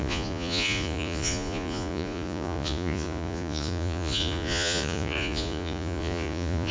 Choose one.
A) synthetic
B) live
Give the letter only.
A